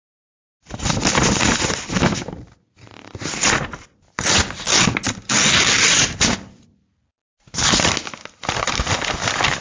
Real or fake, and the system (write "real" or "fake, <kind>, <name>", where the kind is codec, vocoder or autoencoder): real